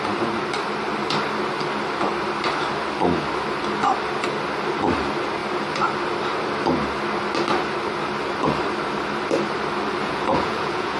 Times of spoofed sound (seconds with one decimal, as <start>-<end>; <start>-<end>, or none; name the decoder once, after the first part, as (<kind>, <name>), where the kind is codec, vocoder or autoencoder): 10.0-11.0 (vocoder, Vocos)